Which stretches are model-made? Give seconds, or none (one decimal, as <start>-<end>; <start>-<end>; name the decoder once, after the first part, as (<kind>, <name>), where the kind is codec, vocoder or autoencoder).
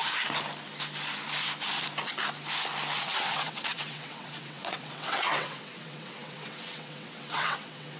3.0-8.0 (vocoder, WaveNeXt)